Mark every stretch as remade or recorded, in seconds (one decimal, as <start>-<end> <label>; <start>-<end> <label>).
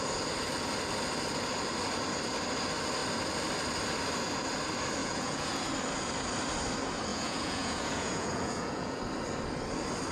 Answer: 0.0-5.0 recorded; 5.0-5.7 remade; 5.7-7.1 recorded; 7.1-9.0 remade; 9.0-10.1 recorded